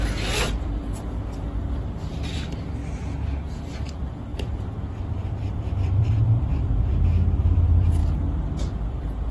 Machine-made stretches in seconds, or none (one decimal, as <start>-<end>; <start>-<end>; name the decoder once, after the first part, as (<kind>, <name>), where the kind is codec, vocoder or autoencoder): 0.0-2.8 (vocoder, BigVGAN v2); 3.6-8.0; 8.6-9.3